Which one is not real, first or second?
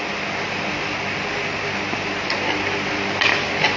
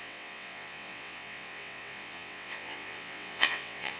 second